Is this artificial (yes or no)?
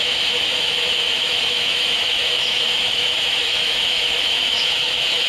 yes